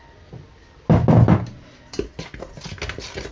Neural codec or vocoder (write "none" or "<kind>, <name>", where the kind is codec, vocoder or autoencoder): none